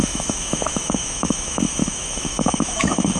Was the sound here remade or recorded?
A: remade